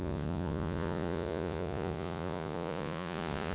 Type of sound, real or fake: fake